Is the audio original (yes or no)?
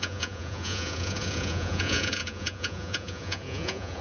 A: no